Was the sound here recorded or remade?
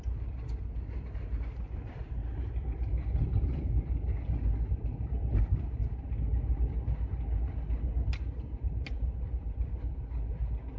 recorded